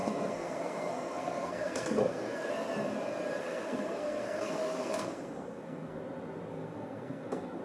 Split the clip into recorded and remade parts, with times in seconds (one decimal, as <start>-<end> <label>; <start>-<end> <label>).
0.0-2.5 remade; 2.5-3.4 recorded; 3.4-6.0 remade; 6.0-6.5 recorded; 6.5-7.6 remade